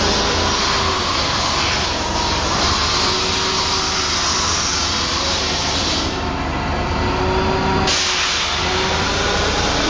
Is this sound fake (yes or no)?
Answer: no